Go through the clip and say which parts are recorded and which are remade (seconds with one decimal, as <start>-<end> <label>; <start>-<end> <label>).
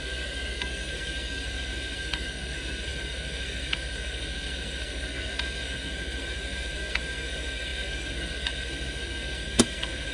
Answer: 0.0-10.1 remade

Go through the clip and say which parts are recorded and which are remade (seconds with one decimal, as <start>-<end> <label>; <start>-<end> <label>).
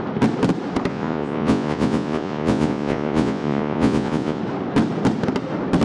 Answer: 0.0-0.9 recorded; 0.9-4.4 remade; 4.4-5.8 recorded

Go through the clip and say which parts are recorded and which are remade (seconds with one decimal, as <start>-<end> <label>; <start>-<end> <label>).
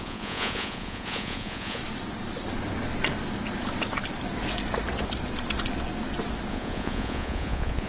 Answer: 0.0-1.8 remade; 1.8-6.5 recorded; 6.5-7.9 remade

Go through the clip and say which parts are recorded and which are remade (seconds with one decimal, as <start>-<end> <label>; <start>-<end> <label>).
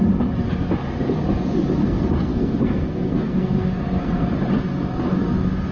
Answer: 0.0-1.8 recorded; 1.8-4.3 remade; 4.3-5.7 recorded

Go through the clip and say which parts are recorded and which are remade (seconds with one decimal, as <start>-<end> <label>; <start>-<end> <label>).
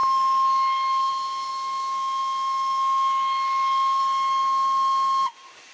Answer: 0.0-1.1 remade; 1.1-1.5 recorded; 1.5-4.0 remade; 4.0-5.7 recorded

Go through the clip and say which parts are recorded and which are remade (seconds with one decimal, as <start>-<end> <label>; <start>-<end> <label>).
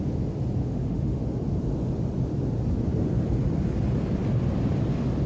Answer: 0.0-0.6 recorded; 0.6-1.2 remade; 1.2-5.3 recorded